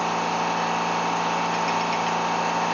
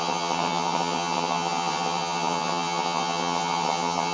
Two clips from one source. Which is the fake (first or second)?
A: second